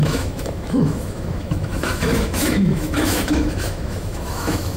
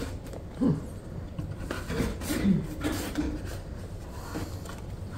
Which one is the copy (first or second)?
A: first